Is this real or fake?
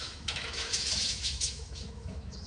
fake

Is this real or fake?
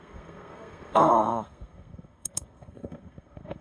fake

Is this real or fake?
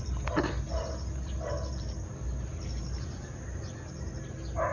real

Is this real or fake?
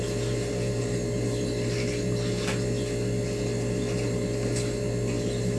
real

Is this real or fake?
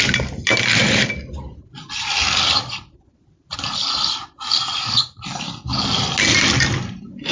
real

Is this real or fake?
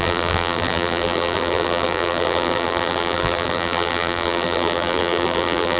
fake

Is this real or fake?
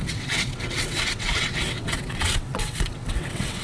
fake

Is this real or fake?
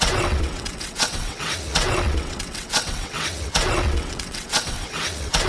fake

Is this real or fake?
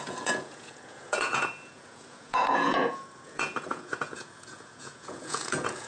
fake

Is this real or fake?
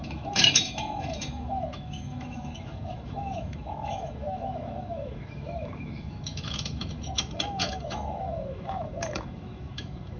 fake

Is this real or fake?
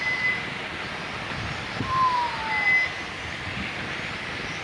real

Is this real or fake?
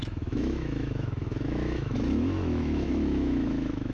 fake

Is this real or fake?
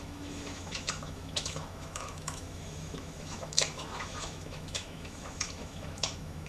fake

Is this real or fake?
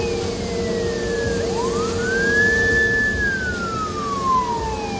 real